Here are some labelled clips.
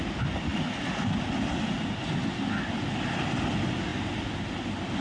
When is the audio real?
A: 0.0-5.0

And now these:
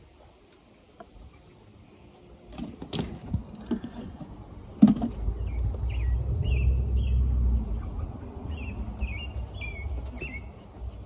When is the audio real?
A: 0.0-3.2; 4.3-11.1

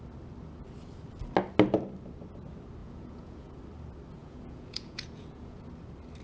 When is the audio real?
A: 0.0-2.8; 3.6-4.2; 5.6-6.2

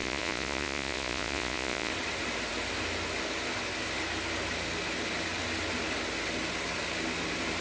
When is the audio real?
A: 1.9-7.6